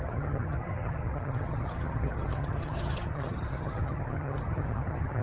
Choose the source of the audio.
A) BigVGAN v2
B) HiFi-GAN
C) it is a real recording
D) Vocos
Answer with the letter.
B